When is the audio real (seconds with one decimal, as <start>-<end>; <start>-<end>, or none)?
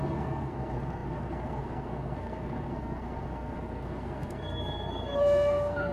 none